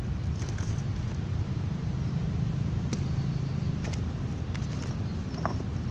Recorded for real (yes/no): yes